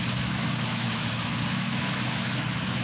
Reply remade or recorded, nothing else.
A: remade